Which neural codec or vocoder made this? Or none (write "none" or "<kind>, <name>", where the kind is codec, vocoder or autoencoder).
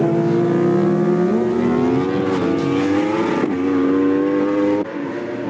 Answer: none